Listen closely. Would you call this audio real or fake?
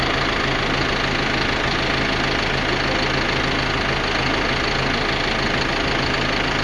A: real